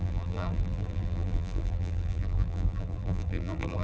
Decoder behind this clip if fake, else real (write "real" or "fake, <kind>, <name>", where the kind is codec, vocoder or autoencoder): fake, vocoder, BigVGAN v2